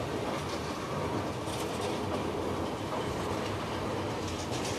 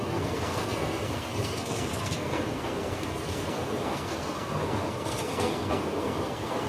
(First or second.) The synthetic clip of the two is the second